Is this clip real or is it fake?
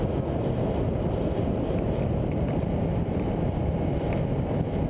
real